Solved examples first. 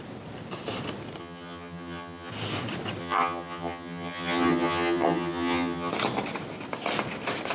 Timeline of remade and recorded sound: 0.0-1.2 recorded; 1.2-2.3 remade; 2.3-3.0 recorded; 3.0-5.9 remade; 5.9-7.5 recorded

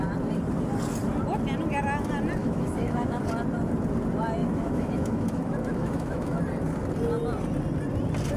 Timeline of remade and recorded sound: 0.0-2.4 recorded; 2.4-3.2 remade; 3.2-4.4 recorded; 4.4-6.4 remade; 6.4-8.4 recorded

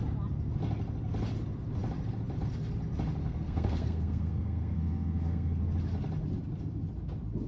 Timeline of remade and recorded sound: 0.0-3.2 recorded; 3.2-5.6 remade; 5.6-7.5 recorded

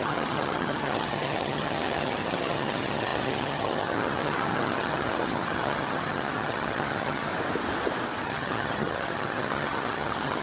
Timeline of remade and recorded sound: 0.0-7.3 remade; 7.3-8.2 recorded; 8.2-10.4 remade

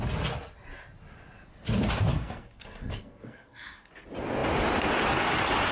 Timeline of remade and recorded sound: 0.0-2.1 recorded; 2.1-3.9 remade; 3.9-5.7 recorded

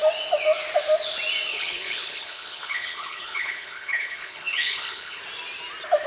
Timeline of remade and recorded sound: 0.0-1.5 recorded; 1.5-5.2 remade; 5.2-6.1 recorded

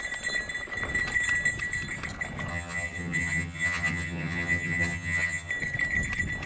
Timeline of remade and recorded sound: 0.0-2.5 recorded; 2.5-5.5 remade; 5.5-6.5 recorded

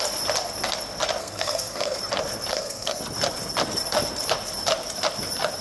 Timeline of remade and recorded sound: 0.0-1.2 recorded; 1.2-2.0 remade; 2.0-2.5 recorded; 2.5-3.0 remade; 3.0-5.6 recorded